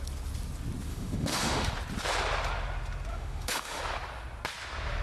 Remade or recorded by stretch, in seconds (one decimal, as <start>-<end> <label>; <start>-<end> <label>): 0.0-0.9 recorded; 0.9-1.7 remade; 1.7-3.1 recorded; 3.1-3.8 remade; 3.8-5.0 recorded